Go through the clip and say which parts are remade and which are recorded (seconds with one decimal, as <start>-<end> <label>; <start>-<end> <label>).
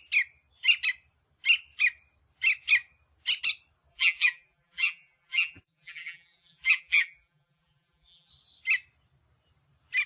0.0-3.9 recorded; 3.9-8.3 remade; 8.3-10.1 recorded